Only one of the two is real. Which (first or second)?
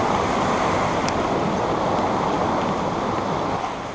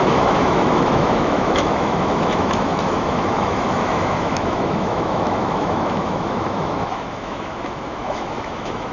first